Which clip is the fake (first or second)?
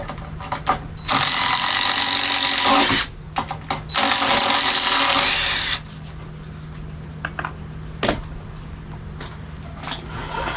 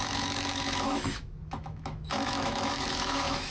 second